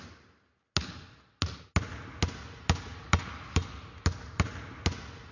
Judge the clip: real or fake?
real